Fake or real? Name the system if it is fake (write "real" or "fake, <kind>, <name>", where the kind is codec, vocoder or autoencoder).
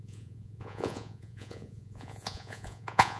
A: fake, vocoder, Vocos